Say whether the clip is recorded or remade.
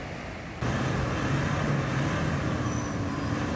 recorded